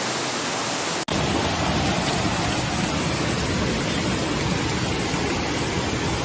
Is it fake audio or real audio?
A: real